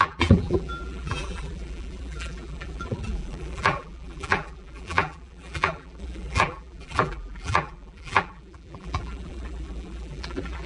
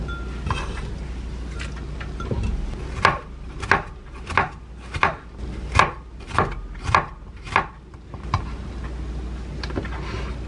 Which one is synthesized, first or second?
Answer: first